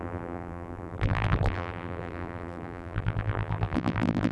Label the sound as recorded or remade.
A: remade